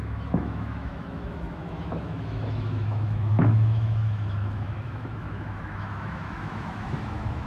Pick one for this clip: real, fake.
fake